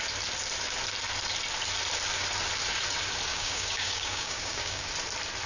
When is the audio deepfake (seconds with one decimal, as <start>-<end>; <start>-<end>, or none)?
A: 3.3-4.9